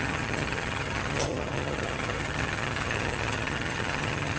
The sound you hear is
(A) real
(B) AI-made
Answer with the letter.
B